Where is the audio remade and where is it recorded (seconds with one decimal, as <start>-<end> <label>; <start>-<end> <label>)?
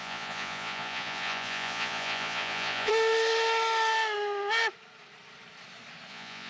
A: 0.0-2.9 remade; 2.9-6.1 recorded; 6.1-6.5 remade